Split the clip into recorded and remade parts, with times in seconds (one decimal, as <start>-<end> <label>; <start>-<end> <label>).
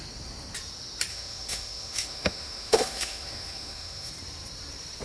0.0-1.1 recorded; 1.1-4.1 remade; 4.1-5.0 recorded